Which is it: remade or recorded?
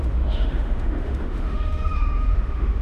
remade